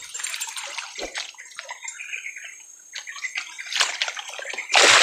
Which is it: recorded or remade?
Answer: remade